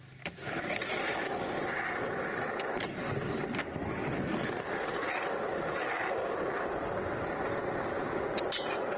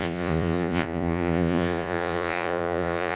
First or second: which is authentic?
first